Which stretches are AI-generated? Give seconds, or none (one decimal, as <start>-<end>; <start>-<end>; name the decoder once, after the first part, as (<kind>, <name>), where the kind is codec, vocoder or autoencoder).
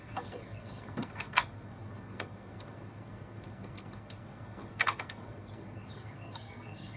0.0-7.0 (codec, SNAC)